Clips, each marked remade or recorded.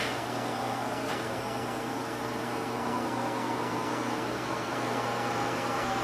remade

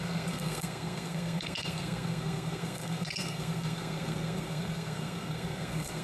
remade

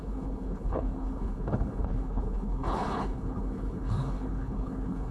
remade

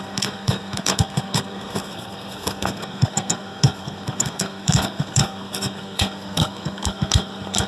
remade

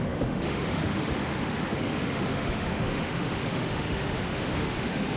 remade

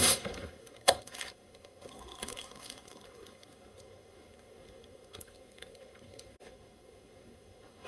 remade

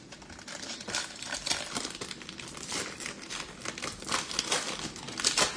recorded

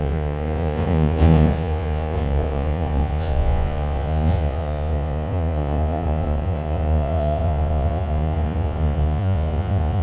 remade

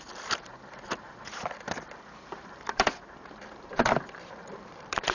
remade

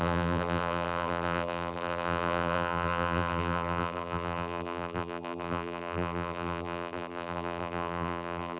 remade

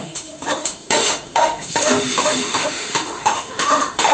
remade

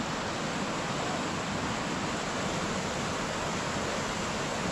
recorded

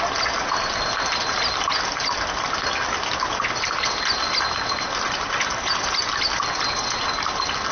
recorded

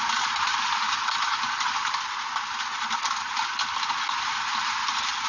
recorded